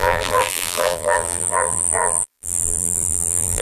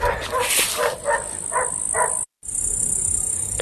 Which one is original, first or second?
second